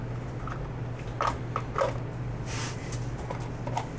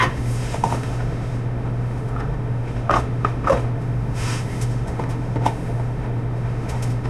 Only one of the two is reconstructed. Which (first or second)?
second